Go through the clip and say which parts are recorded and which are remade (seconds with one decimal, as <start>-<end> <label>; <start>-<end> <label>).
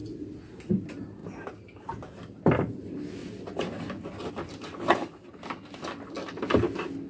0.0-7.1 recorded